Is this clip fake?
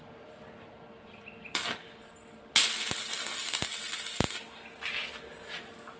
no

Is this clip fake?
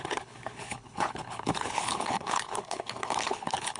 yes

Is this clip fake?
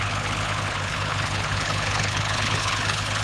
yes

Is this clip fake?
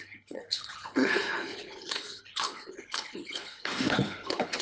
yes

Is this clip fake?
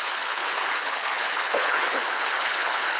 yes